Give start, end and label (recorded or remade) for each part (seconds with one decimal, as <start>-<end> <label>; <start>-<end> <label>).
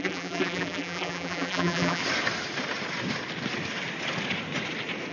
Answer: 0.0-2.0 remade; 2.0-5.1 recorded